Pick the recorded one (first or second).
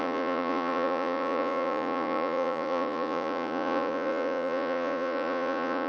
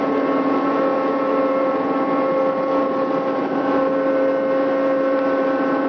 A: second